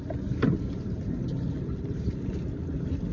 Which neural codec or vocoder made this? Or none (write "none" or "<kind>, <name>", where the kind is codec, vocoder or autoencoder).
none